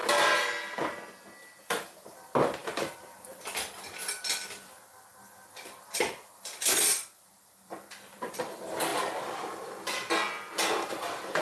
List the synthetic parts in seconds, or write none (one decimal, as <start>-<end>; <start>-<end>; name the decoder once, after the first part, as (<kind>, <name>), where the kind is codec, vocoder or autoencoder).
1.6-8.9 (vocoder, BigVGAN v2); 10.9-11.4